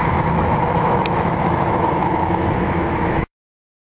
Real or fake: fake